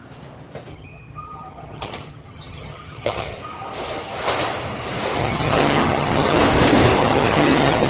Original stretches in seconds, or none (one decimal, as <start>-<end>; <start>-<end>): 0.0-0.7; 3.4-5.2; 6.4-7.0